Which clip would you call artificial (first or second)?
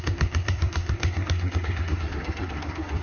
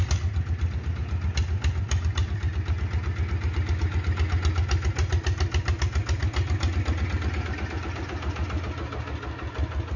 first